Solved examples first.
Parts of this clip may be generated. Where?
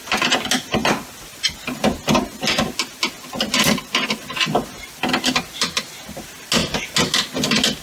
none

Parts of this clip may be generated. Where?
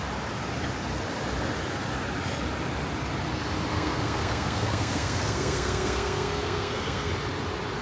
3.7-7.1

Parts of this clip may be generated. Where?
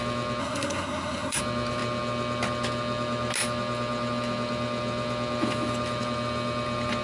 0.4-1.4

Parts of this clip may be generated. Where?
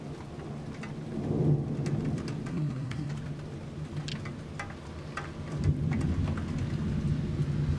2.5-3.1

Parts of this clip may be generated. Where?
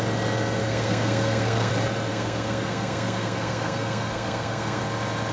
0.6-1.7; 2.1-4.8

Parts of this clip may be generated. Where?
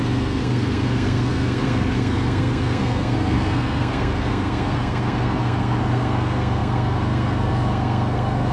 0.0-8.5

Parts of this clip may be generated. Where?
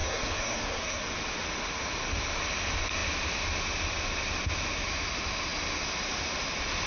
0.0-1.0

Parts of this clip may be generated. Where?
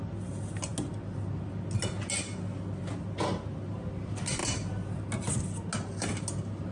none